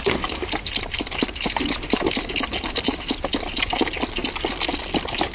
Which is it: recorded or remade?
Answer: recorded